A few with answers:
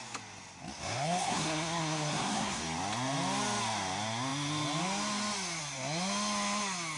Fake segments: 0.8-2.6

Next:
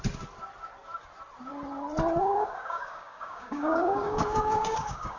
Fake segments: 2.2-5.2

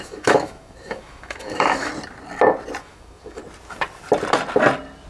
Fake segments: 0.0-1.9; 2.8-3.4

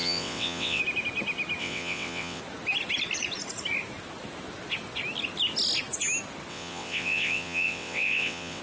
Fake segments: 0.0-0.8; 1.6-2.4; 6.5-8.6